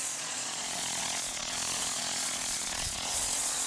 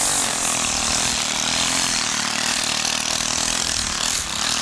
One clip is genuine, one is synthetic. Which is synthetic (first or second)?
first